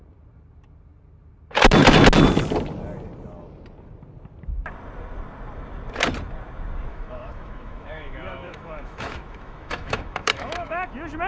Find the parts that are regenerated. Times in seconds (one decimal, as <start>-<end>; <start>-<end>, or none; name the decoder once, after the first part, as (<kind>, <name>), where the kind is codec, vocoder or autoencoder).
6.9-10.9 (autoencoder, DAC-VAE)

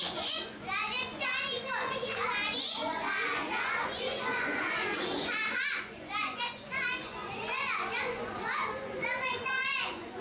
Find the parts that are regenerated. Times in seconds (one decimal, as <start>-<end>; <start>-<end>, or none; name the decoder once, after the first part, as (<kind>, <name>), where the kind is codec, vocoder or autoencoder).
0.0-10.2 (vocoder, Vocos)

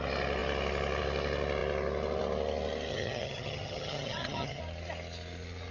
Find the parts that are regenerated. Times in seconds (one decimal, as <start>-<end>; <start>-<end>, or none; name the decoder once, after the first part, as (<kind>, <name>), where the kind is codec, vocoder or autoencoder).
2.9-4.6 (vocoder, HiFi-GAN)